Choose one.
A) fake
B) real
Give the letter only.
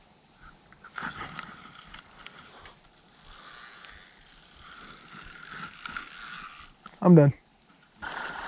B